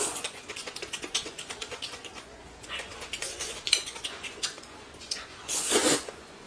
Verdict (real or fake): fake